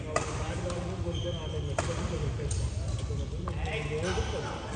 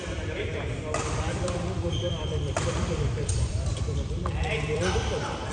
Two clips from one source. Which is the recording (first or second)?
first